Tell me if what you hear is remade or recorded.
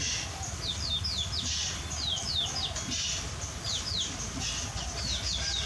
recorded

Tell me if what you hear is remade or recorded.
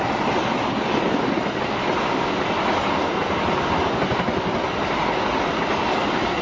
recorded